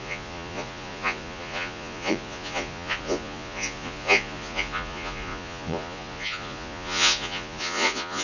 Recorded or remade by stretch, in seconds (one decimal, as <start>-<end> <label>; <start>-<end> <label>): 0.0-8.2 remade